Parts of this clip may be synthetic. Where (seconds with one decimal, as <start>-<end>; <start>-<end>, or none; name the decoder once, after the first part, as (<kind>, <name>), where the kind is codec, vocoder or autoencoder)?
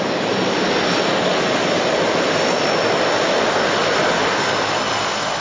none